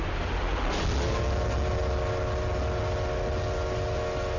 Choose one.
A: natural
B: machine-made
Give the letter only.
A